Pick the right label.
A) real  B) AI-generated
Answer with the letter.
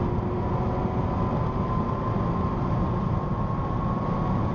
A